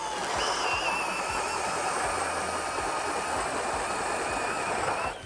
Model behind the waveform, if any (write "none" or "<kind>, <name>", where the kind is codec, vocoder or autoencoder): none